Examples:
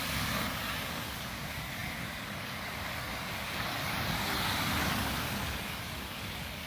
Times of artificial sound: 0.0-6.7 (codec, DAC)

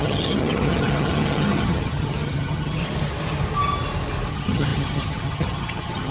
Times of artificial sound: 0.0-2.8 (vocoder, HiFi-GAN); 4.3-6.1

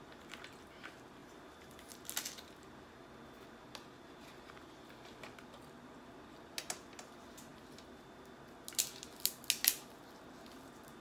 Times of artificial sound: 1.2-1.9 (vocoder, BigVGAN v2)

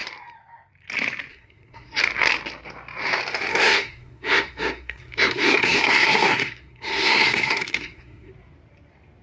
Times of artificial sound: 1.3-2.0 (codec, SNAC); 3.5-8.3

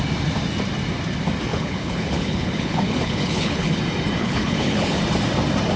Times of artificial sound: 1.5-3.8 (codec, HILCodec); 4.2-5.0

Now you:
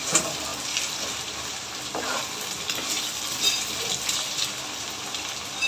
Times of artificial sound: 0.0-5.7 (vocoder, BigVGAN v2)

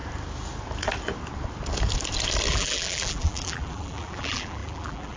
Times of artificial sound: 2.5-5.2 (vocoder, BigVGAN v2)

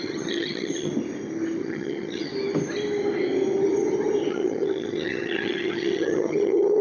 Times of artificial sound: 0.0-0.9 (vocoder, HiFi-GAN); 1.6-2.3; 4.3-6.8